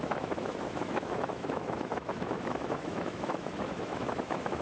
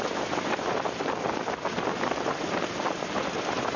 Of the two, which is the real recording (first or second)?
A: second